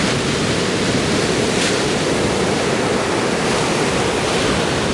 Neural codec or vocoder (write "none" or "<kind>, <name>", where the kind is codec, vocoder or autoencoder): none